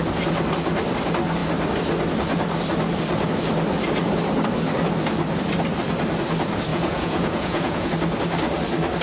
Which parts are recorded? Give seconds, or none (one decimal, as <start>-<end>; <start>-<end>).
0.0-6.7; 7.9-9.0